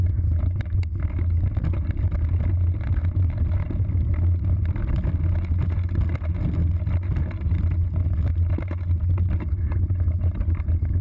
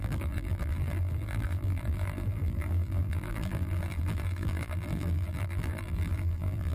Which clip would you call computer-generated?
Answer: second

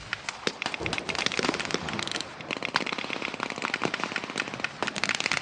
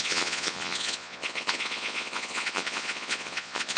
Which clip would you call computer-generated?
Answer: second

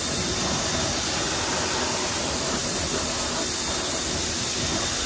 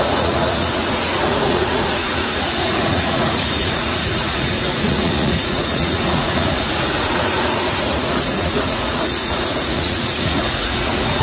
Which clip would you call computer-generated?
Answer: second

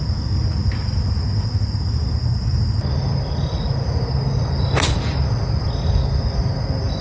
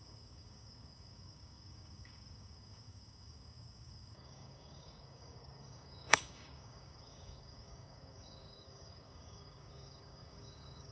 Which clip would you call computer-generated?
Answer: second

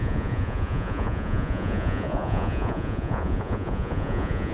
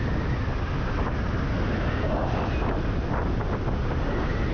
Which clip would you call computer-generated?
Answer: first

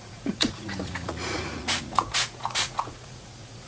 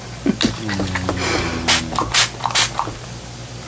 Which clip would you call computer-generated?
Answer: first